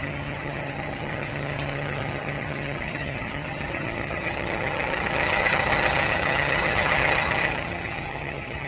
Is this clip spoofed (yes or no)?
yes